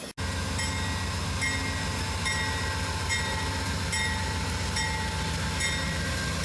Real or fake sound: real